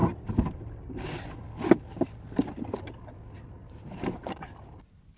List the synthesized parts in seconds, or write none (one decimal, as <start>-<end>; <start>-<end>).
3.6-4.8